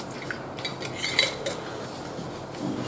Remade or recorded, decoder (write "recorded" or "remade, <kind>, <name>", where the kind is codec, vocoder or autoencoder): recorded